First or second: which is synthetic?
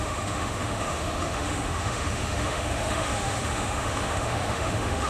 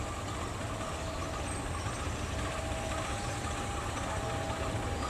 first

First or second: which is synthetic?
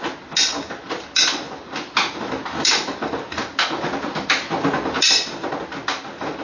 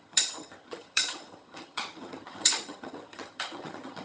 second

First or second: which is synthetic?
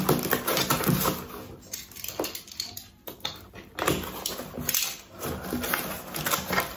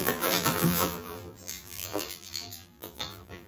second